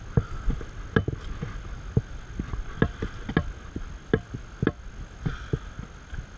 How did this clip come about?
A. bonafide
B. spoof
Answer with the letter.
A